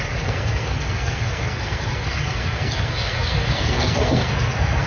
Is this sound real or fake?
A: fake